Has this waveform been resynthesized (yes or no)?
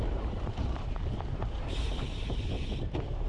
yes